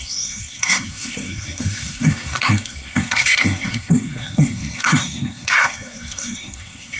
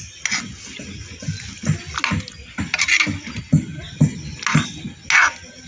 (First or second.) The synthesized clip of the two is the first